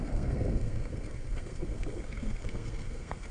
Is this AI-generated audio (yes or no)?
yes